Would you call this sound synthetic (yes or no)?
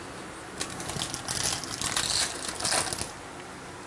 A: no